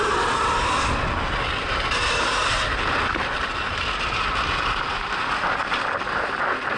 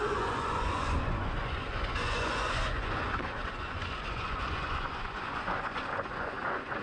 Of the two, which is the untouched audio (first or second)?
first